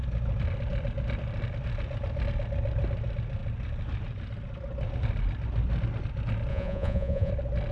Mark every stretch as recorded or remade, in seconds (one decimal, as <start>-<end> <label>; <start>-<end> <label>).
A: 0.0-6.5 recorded; 6.5-7.3 remade; 7.3-7.7 recorded